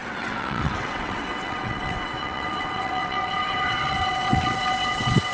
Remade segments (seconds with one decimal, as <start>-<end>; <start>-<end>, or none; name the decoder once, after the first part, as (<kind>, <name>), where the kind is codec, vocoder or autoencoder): 0.0-5.3 (vocoder, WaveNeXt)